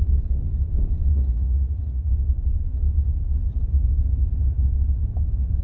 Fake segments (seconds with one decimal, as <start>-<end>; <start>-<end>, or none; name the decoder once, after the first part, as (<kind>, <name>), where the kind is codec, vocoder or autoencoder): 1.1-2.1 (vocoder, Vocos)